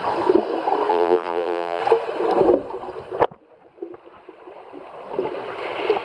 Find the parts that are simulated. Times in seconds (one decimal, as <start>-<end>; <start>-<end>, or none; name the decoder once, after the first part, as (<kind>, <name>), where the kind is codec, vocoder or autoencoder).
0.9-1.8 (vocoder, BigVGAN v2)